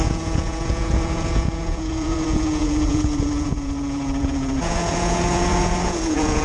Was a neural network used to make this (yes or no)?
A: yes